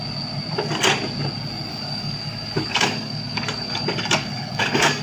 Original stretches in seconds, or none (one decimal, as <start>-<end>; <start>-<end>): 0.0-1.7